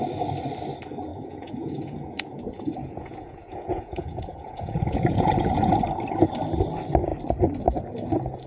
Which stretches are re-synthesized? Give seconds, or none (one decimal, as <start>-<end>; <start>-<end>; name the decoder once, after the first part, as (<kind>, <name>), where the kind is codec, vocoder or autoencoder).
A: 1.1-5.7 (vocoder, Vocos)